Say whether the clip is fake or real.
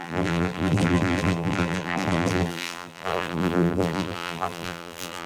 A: fake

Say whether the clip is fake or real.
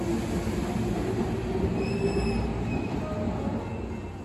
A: real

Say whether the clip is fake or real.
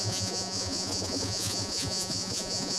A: fake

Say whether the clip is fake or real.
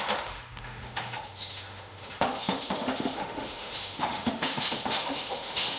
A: fake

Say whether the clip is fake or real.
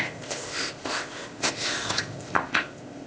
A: fake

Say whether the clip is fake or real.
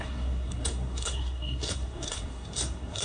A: fake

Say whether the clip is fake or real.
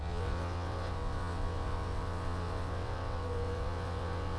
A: fake